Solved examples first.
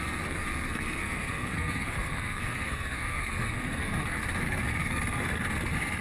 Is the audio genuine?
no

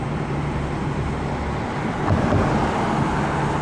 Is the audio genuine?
yes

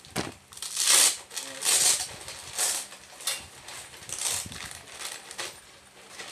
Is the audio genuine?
yes